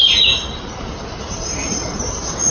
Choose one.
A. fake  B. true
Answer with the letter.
B